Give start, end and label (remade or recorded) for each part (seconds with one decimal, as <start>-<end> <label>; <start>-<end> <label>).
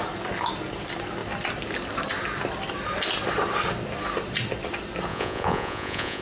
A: 0.0-5.1 recorded; 5.1-6.2 remade